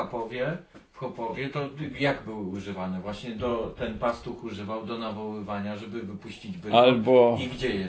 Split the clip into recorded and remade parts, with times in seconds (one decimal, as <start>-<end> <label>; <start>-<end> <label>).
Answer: 0.0-1.3 recorded; 1.3-2.0 remade; 2.0-7.9 recorded